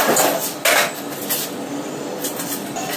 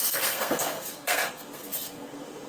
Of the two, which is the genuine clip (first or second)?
first